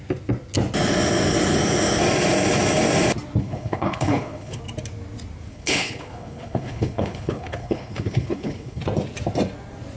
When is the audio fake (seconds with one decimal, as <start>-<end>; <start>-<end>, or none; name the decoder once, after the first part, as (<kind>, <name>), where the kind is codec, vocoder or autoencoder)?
3.4-4.6 (codec, HILCodec); 5.5-8.8